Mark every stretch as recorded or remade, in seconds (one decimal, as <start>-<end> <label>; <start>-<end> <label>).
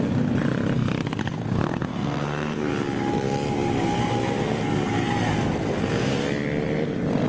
0.0-1.2 recorded; 1.2-2.7 remade; 2.7-7.3 recorded